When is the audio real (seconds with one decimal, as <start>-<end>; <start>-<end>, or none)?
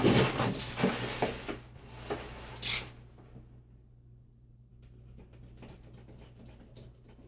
0.0-7.3